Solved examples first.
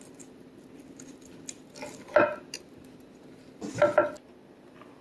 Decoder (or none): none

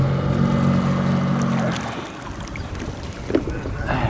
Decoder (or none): none